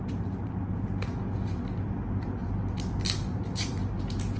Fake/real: real